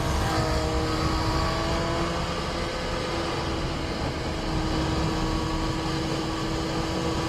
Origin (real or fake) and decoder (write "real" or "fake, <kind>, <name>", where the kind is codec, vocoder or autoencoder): real